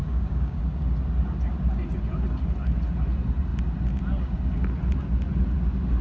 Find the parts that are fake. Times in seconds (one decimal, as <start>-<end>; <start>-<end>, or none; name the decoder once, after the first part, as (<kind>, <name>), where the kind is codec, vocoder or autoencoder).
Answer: 0.0-0.6 (codec, DAC)